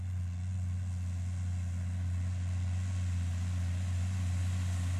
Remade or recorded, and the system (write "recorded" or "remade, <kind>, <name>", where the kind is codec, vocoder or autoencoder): recorded